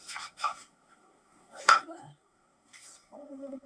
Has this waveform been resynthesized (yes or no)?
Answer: yes